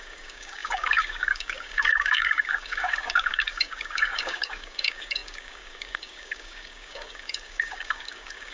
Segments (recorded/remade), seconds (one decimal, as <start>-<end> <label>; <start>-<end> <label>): 0.0-8.5 remade